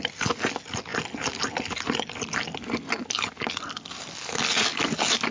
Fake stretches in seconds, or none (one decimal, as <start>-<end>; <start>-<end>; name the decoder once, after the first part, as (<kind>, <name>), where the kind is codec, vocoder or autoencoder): none